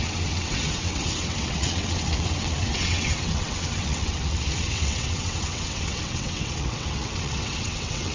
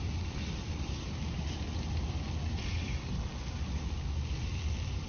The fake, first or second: first